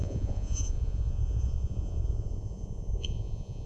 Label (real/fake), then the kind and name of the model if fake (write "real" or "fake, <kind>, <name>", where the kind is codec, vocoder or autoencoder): fake, vocoder, Vocos